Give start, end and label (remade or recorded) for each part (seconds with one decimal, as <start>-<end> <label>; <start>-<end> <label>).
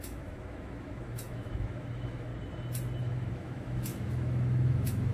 0.0-2.3 remade; 2.3-3.0 recorded; 3.0-5.1 remade